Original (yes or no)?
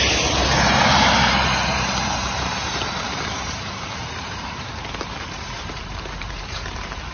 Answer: no